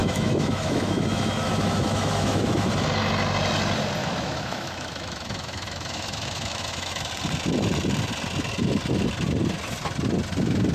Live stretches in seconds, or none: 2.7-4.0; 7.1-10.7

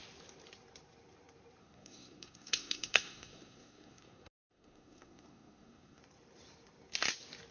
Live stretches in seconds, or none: 0.0-1.6; 6.0-7.5